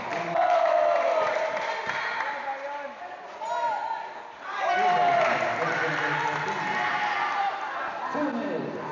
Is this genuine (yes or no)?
yes